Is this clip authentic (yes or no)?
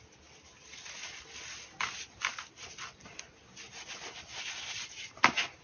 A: yes